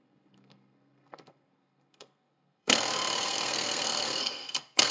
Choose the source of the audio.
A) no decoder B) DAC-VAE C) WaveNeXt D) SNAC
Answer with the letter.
D